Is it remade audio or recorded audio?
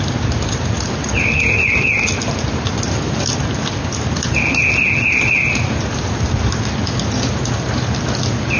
recorded